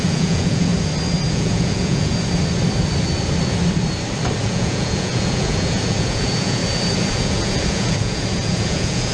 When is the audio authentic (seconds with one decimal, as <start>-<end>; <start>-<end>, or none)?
0.7-1.3; 2.1-4.4; 6.6-7.1